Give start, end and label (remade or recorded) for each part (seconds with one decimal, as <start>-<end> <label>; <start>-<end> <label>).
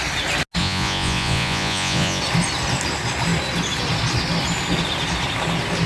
0.0-0.6 recorded; 0.6-2.2 remade; 2.2-5.9 recorded